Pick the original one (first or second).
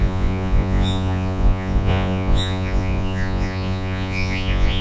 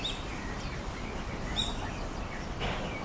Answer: second